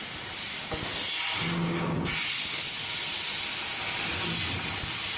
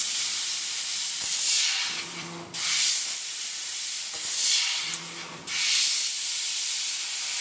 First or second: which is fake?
second